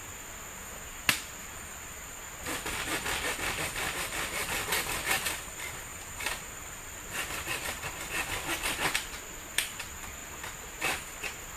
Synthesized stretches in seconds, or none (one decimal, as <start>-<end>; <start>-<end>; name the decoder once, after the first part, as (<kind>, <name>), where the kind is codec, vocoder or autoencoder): 5.9-6.5 (vocoder, BigVGAN v2); 10.2-10.8